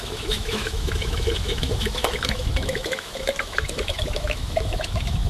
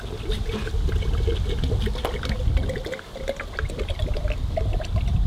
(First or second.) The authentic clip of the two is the second